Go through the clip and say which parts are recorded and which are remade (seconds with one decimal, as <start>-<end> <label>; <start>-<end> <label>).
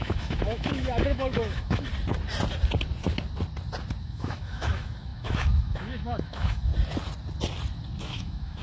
0.0-1.9 remade; 1.9-4.0 recorded; 4.0-6.7 remade; 6.7-8.0 recorded; 8.0-8.6 remade